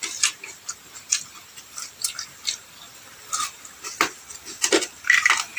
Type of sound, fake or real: fake